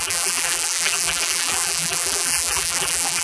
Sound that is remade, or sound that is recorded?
remade